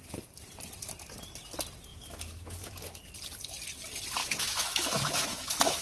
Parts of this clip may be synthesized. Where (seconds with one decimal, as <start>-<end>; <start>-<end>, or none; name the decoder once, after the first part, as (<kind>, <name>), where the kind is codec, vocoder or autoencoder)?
1.9-3.0 (autoencoder, DAC-VAE); 4.2-5.8